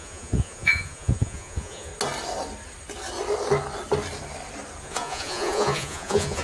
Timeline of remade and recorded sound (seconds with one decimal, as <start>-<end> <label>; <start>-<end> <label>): 0.0-1.9 remade; 1.9-4.8 recorded; 4.8-6.4 remade